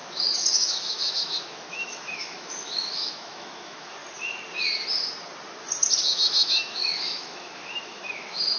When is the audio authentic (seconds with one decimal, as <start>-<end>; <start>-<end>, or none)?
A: 4.0-6.0